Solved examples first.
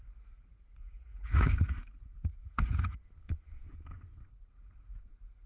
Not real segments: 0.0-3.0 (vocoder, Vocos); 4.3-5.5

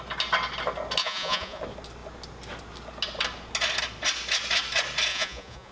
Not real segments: 1.0-1.6 (vocoder, Vocos); 5.1-5.7